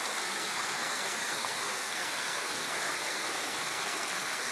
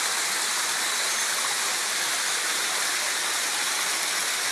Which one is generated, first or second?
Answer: first